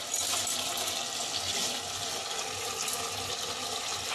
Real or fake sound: real